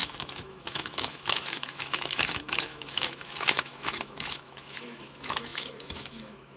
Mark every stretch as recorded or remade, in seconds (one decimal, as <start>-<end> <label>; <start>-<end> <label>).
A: 0.0-6.6 remade